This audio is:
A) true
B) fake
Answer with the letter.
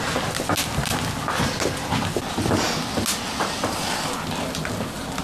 A